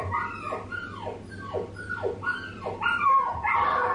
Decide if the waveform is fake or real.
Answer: real